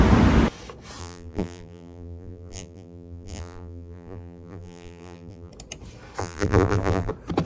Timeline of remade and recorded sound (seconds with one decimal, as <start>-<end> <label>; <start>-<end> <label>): 0.0-1.0 recorded; 1.0-5.5 remade; 5.5-6.2 recorded; 6.2-7.1 remade; 7.1-7.5 recorded